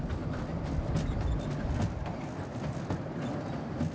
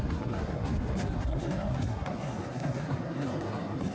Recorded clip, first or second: first